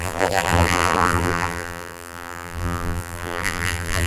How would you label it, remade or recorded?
remade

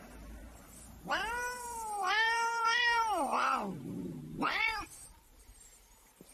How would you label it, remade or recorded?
remade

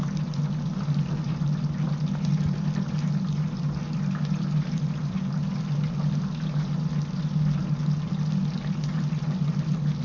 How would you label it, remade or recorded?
recorded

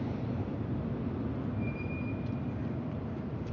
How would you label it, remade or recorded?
recorded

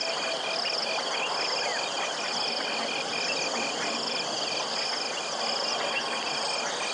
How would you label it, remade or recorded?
recorded